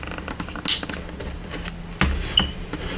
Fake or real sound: real